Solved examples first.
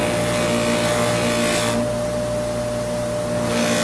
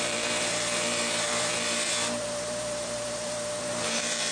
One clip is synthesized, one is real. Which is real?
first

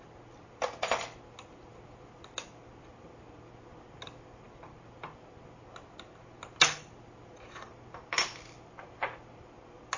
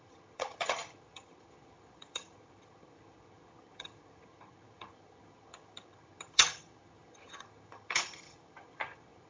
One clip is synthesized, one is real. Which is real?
first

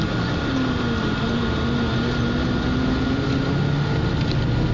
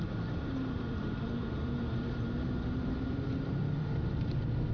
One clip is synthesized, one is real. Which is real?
first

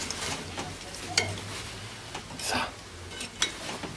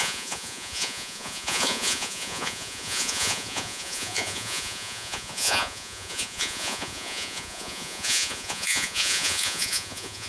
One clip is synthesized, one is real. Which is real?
first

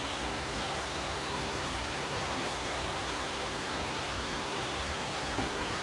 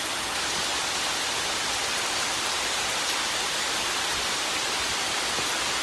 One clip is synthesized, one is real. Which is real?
second